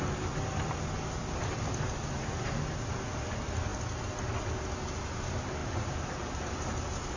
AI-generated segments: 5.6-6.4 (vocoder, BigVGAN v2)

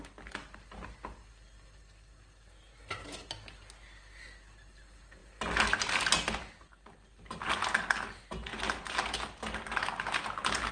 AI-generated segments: none

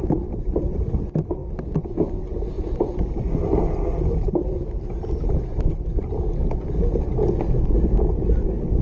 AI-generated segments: none

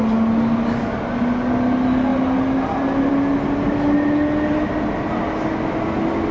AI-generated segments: none

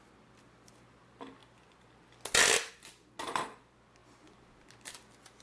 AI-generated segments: none

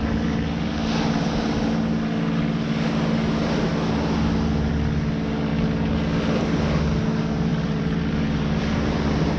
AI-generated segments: 7.5-9.4 (vocoder, BigVGAN v2)

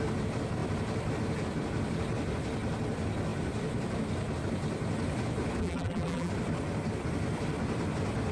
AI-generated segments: 5.6-6.3 (vocoder, BigVGAN v2)

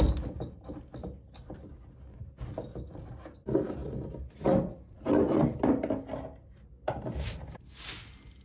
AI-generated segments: 3.8-7.9 (vocoder, BigVGAN v2)